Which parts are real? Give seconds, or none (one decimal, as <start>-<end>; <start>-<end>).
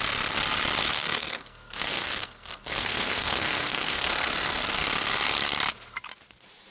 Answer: 0.0-0.8; 4.8-6.7